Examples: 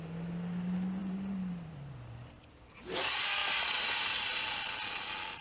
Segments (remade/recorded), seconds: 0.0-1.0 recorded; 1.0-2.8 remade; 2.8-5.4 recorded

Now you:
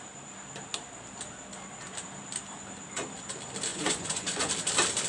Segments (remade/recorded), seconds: 0.0-3.7 recorded; 3.7-4.5 remade; 4.5-5.1 recorded

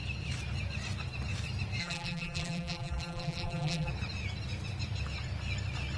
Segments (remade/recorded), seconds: 0.0-1.8 recorded; 1.8-3.9 remade; 3.9-6.0 recorded

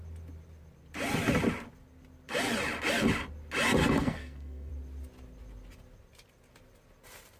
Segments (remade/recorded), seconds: 0.0-3.8 recorded; 3.8-4.7 remade; 4.7-7.4 recorded

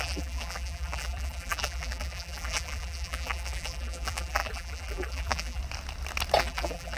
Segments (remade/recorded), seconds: 0.0-5.6 remade; 5.6-6.4 recorded; 6.4-7.0 remade

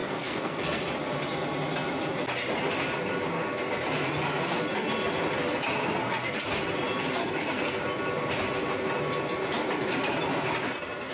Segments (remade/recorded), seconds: 0.0-0.8 remade; 0.8-7.2 recorded; 7.2-7.8 remade; 7.8-11.1 recorded